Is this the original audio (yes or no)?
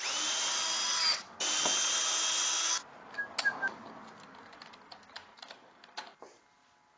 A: yes